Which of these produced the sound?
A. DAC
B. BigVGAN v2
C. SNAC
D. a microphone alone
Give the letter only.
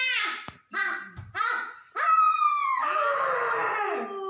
D